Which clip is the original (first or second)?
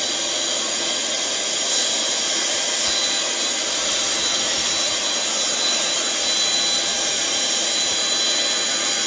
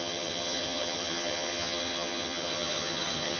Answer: first